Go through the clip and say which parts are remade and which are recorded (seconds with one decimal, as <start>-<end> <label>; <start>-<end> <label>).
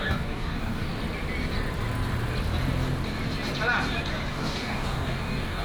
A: 0.0-0.9 remade; 0.9-4.3 recorded; 4.3-5.6 remade